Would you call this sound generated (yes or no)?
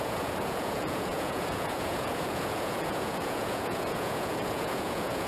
yes